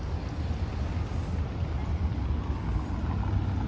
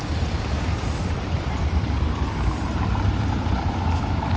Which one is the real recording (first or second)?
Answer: first